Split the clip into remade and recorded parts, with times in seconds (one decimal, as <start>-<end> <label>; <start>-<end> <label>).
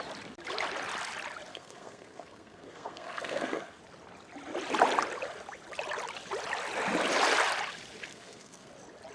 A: 0.0-1.5 recorded; 1.5-3.8 remade; 3.8-8.1 recorded; 8.1-8.7 remade; 8.7-9.1 recorded